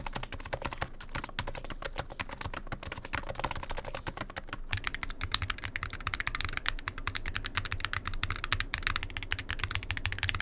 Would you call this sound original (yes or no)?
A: yes